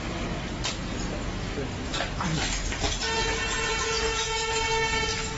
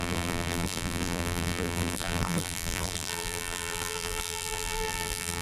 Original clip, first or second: first